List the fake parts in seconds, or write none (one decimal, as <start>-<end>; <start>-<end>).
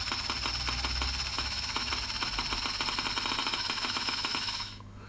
1.3-1.9; 3.4-5.1